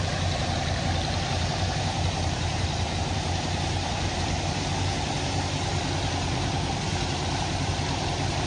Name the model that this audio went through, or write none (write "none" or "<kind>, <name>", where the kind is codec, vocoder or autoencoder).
vocoder, BigVGAN v2